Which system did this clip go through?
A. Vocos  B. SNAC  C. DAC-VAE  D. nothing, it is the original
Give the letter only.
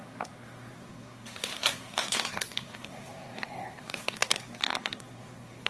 B